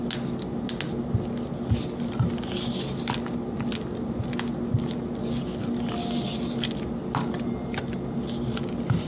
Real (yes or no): yes